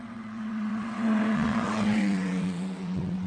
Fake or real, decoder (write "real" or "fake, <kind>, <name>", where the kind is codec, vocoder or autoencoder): fake, vocoder, WaveNeXt